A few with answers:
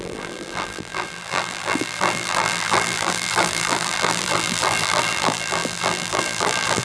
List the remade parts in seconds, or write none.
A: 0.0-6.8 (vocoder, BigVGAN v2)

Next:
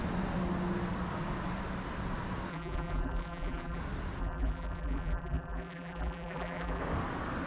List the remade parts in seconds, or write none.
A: 2.5-3.8 (vocoder, BigVGAN v2); 4.2-6.8

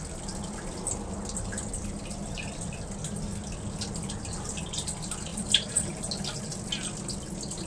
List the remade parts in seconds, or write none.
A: 5.3-6.1 (vocoder, BigVGAN v2)

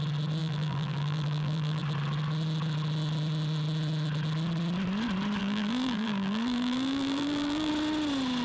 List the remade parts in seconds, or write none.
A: 0.4-1.8 (vocoder, BigVGAN v2); 5.4-7.7

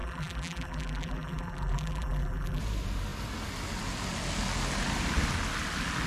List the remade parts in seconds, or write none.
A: 0.0-2.6 (vocoder, BigVGAN v2)